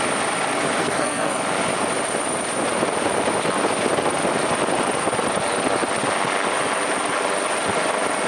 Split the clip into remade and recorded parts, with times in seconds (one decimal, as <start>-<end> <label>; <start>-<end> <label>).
0.0-0.8 recorded; 0.8-1.4 remade; 1.4-8.3 recorded